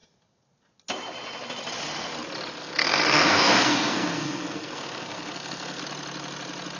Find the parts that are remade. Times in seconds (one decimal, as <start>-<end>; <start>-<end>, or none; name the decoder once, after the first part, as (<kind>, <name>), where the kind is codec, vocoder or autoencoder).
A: 2.6-5.8 (codec, SNAC)